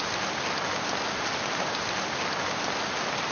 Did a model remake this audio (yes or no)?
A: no